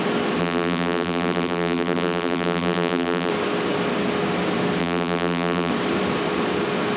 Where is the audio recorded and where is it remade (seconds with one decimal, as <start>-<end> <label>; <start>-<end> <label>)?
0.0-0.4 recorded; 0.4-3.3 remade; 3.3-4.8 recorded; 4.8-5.7 remade; 5.7-7.0 recorded